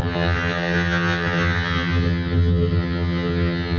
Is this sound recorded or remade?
remade